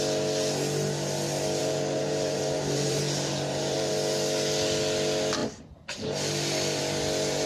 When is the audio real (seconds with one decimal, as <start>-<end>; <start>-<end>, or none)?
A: 0.0-1.6; 3.9-7.5